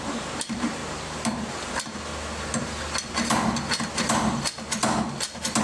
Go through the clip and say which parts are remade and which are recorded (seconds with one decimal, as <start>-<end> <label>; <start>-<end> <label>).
0.0-0.8 remade; 0.8-1.5 recorded; 1.5-2.1 remade; 2.1-5.6 recorded